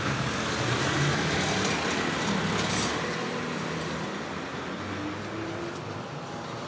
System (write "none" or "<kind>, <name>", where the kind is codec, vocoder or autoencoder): none